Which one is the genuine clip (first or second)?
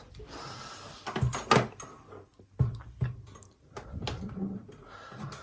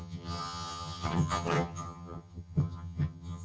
first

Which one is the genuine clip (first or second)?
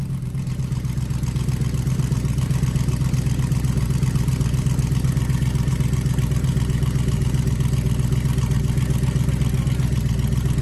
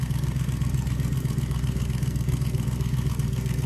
first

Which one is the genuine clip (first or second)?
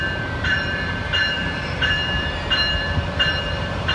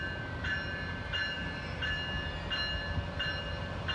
second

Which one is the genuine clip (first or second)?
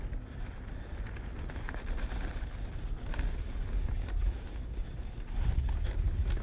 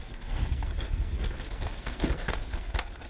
first